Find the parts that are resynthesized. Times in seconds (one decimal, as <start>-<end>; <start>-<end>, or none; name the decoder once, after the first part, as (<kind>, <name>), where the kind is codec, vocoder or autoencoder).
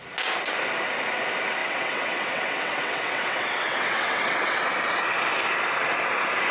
1.6-4.6 (vocoder, WaveNeXt)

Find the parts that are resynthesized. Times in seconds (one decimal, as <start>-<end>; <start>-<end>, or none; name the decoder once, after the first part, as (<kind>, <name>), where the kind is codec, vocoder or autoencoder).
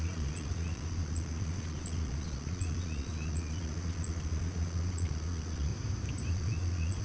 0.0-5.7 (vocoder, Vocos); 6.3-7.0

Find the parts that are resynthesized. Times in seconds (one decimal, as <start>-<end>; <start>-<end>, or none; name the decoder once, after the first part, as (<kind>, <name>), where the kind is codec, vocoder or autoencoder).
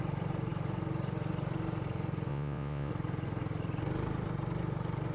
2.3-2.9 (vocoder, Vocos)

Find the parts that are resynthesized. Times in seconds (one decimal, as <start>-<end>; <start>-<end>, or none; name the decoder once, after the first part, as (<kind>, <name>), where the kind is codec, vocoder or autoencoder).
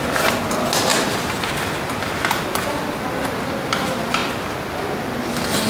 none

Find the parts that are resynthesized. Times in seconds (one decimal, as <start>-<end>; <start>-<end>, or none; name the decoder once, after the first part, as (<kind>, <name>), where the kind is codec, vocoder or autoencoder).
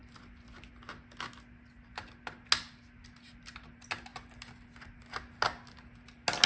none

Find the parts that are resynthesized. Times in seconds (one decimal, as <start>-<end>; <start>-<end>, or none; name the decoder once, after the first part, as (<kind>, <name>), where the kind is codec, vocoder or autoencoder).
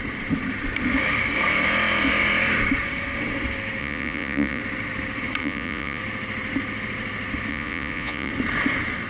3.8-4.6 (vocoder, Vocos); 5.4-6.0; 7.5-8.3